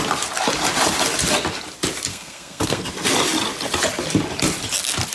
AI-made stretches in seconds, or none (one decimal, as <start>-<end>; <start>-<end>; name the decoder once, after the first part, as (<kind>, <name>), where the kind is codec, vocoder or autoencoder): 2.1-2.8 (codec, SNAC)